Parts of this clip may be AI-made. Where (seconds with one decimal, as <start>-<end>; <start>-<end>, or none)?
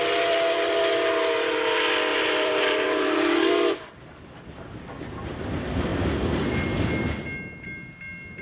2.1-3.5; 5.9-6.5